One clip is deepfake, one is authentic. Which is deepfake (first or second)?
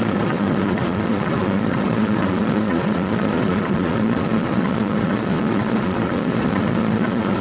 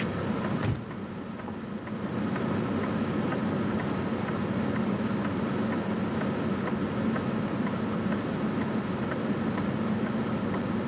first